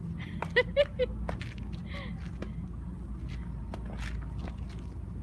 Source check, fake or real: real